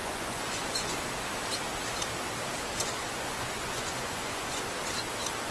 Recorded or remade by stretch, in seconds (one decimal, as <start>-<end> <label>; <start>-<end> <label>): 0.0-1.0 remade; 1.0-2.8 recorded; 2.8-4.7 remade; 4.7-5.5 recorded